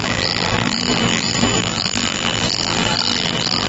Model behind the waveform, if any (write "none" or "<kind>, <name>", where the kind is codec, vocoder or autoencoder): vocoder, BigVGAN v2